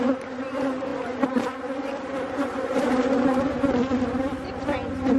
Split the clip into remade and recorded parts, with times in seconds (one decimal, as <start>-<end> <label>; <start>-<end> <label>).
0.0-5.2 recorded